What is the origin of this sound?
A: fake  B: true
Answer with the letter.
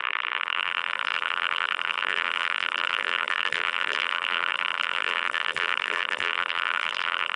A